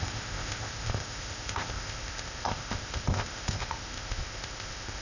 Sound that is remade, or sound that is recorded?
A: remade